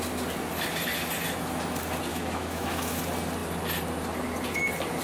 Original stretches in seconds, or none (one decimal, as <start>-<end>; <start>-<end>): 0.0-2.1; 3.0-5.0